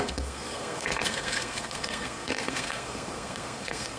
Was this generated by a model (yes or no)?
yes